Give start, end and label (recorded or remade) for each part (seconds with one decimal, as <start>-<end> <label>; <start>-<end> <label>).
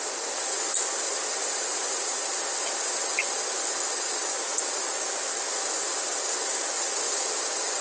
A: 0.0-1.4 recorded; 1.4-2.3 remade; 2.3-7.8 recorded